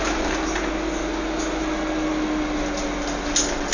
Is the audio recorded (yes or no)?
yes